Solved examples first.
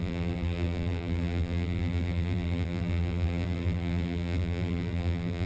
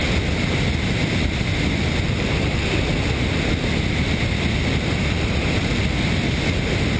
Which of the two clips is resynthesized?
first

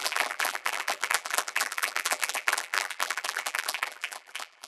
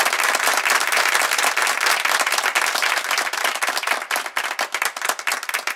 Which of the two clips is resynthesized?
first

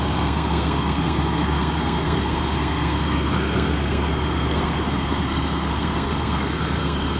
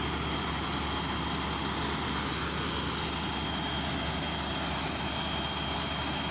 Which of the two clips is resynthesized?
first